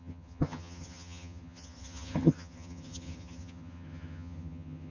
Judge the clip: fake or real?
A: fake